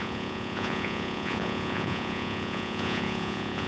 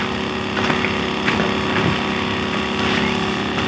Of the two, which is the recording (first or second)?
second